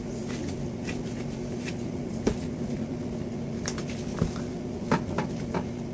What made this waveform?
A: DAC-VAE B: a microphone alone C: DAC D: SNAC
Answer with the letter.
B